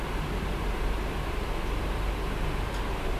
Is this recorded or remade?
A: recorded